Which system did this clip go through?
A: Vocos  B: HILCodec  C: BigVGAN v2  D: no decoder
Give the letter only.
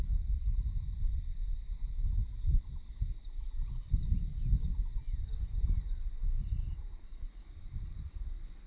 D